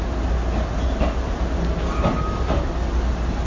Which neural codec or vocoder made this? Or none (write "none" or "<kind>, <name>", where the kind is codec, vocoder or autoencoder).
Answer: none